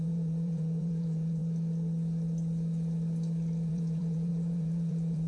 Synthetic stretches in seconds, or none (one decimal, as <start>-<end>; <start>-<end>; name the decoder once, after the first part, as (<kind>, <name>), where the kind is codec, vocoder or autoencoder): 0.0-1.4 (vocoder, Vocos); 3.7-5.3